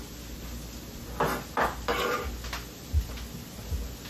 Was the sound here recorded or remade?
recorded